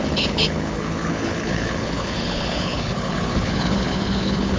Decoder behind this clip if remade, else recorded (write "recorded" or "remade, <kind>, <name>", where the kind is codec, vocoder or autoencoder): remade, codec, HILCodec